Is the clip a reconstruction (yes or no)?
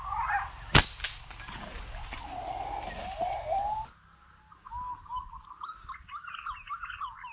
no